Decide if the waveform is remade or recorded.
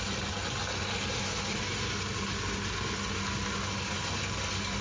recorded